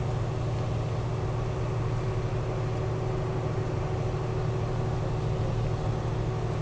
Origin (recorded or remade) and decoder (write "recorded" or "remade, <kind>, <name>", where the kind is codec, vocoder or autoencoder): recorded